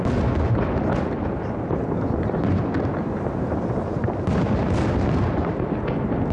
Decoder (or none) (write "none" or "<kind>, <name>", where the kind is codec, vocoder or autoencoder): none